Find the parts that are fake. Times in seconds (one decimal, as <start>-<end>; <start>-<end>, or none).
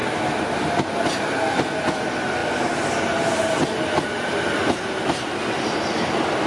none